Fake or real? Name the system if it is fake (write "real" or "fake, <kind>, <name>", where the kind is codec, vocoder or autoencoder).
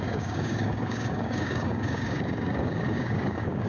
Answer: fake, codec, DAC